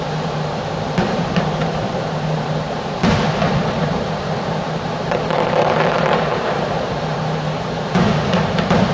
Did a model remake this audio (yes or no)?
yes